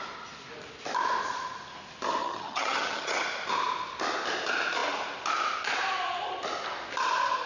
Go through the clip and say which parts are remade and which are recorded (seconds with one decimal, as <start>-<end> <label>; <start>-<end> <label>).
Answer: 0.0-2.2 recorded; 2.2-3.2 remade; 3.2-7.5 recorded